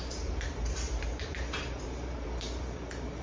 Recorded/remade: remade